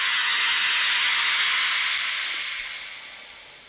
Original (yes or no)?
yes